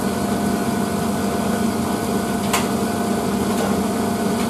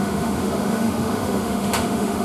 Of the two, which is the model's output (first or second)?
second